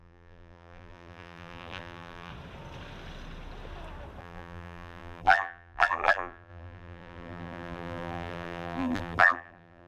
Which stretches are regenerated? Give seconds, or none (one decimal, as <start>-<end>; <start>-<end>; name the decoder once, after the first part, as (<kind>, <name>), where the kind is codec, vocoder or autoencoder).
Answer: 0.0-2.3 (vocoder, BigVGAN v2); 4.2-9.9